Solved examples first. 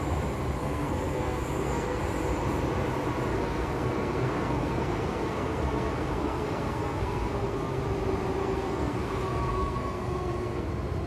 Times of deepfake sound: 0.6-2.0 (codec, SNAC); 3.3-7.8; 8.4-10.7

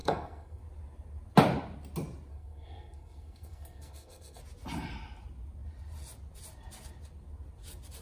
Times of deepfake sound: 0.0-0.6 (codec, SNAC); 2.3-4.4